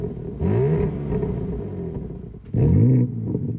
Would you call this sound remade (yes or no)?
no